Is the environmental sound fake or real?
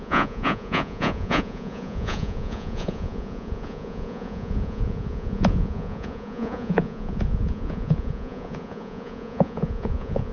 fake